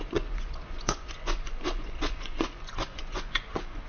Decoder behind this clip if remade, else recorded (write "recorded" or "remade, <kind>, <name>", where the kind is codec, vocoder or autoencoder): remade, vocoder, Vocos